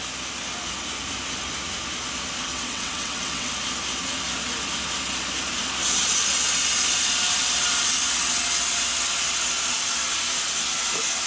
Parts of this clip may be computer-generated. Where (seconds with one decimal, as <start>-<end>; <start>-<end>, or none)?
2.5-3.5